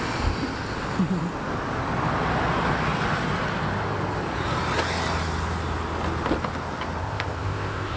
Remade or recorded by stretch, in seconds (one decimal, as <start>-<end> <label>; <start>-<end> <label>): 0.0-7.0 recorded; 7.0-8.0 remade

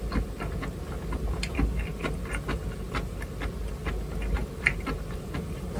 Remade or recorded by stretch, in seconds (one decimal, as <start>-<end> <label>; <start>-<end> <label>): 0.0-4.4 recorded; 4.4-5.8 remade

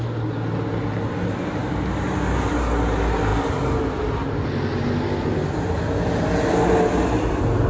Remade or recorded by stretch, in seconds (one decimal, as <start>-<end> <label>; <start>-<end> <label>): 0.0-7.7 recorded

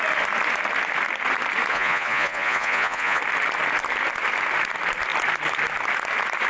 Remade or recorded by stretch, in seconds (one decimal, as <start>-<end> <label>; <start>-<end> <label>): 0.0-1.7 recorded; 1.7-3.2 remade; 3.2-6.5 recorded

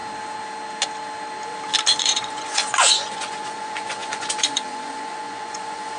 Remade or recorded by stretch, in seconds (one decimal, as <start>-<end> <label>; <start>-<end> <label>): 0.0-2.0 recorded; 2.0-6.0 remade

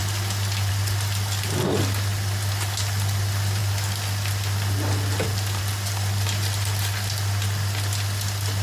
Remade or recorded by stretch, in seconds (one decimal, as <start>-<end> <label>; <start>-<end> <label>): 0.0-8.6 recorded